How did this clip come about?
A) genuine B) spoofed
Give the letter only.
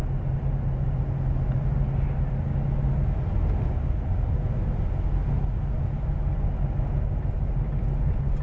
A